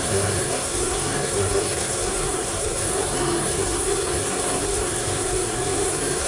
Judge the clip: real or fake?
fake